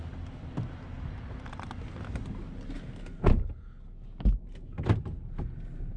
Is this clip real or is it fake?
real